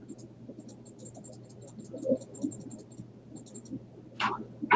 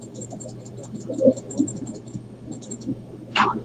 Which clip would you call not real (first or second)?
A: second